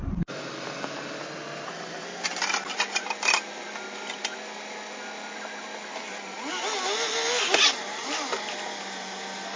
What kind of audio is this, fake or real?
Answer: real